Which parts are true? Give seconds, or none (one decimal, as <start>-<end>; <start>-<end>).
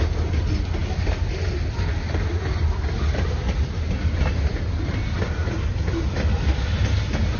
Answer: 0.0-7.4